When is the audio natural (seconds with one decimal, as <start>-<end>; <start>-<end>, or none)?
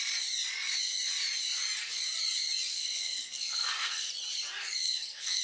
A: 0.0-2.7; 4.1-4.6